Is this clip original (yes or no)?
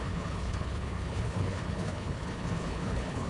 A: no